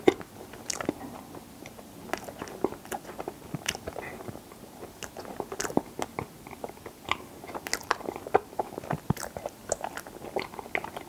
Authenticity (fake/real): real